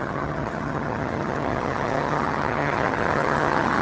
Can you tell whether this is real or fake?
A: fake